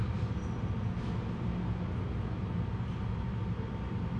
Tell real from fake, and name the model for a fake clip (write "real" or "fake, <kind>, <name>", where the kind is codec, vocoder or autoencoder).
real